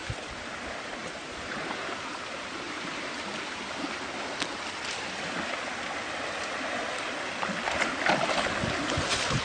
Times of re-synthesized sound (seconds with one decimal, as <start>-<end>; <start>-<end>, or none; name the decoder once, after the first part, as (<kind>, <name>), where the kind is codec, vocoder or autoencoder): 0.0-0.6 (vocoder, BigVGAN v2); 1.0-2.9